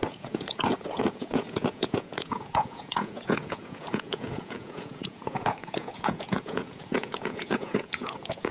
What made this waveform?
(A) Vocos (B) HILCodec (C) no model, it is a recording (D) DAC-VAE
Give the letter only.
A